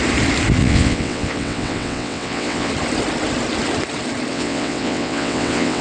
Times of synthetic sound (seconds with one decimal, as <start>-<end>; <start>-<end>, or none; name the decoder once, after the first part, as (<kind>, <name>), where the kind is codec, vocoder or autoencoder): 0.6-2.7 (vocoder, WaveNeXt); 4.3-5.8